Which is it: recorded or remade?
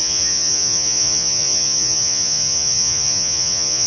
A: remade